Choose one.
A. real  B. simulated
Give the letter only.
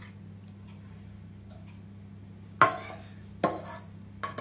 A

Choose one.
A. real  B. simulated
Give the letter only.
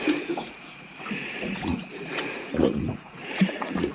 B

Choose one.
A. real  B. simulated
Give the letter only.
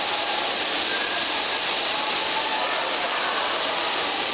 A